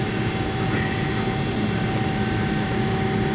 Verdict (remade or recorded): recorded